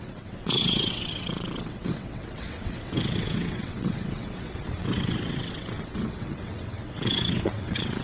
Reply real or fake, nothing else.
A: fake